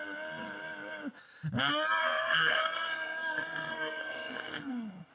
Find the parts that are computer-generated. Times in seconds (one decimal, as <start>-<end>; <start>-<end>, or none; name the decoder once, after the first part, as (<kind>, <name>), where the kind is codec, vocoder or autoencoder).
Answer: 2.0-5.1 (codec, SNAC)